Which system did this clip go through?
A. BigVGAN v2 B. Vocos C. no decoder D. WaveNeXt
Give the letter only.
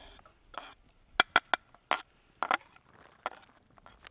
C